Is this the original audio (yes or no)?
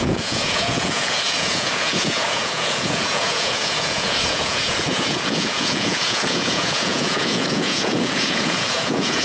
no